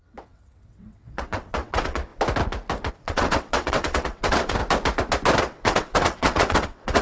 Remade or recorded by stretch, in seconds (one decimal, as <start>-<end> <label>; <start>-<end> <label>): 0.0-2.1 remade; 2.1-2.9 recorded; 2.9-4.6 remade; 4.6-5.4 recorded; 5.4-7.0 remade